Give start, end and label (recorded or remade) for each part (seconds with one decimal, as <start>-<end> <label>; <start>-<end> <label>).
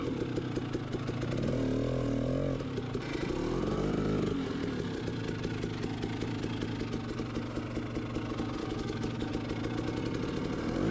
0.0-8.6 recorded; 8.6-9.3 remade; 9.3-10.9 recorded